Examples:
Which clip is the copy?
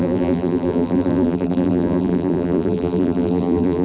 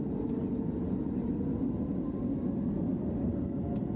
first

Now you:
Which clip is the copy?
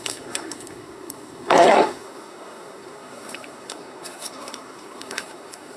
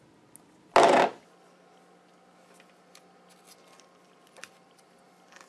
first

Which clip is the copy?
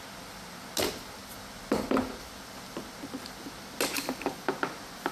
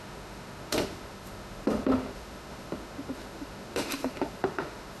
second